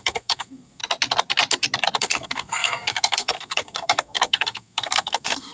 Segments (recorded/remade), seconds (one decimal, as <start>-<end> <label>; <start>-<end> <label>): 0.0-0.8 remade; 0.8-2.0 recorded; 2.0-5.5 remade